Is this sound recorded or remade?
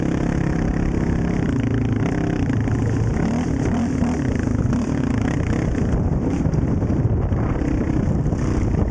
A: recorded